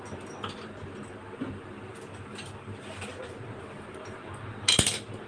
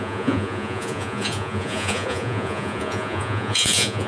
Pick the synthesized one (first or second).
second